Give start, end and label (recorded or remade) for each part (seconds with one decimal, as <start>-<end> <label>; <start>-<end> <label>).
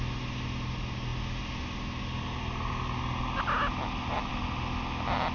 0.0-5.3 recorded